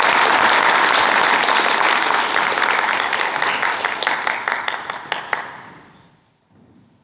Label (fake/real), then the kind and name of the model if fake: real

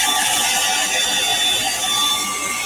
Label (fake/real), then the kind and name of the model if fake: real